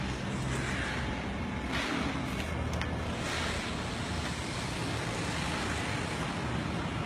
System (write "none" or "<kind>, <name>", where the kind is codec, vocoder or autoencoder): none